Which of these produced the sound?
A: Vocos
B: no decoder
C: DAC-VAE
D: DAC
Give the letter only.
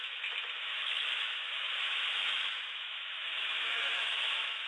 C